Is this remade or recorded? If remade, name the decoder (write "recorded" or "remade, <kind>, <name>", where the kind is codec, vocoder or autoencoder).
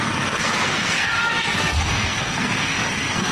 remade, codec, SNAC